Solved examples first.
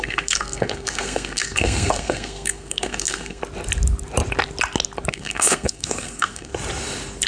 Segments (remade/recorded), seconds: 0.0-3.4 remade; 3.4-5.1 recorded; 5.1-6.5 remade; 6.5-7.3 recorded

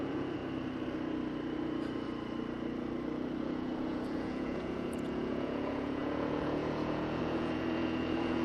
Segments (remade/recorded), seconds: 0.0-0.4 remade; 0.4-3.4 recorded; 3.4-8.4 remade

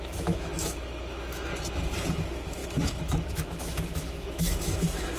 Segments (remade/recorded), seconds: 0.0-1.5 remade; 1.5-2.1 recorded; 2.1-5.2 remade

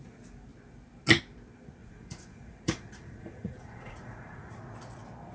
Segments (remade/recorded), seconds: 0.0-1.8 recorded; 1.8-4.6 remade; 4.6-5.3 recorded

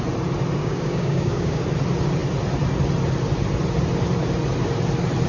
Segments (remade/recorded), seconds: 0.0-0.6 recorded; 0.6-1.6 remade; 1.6-5.3 recorded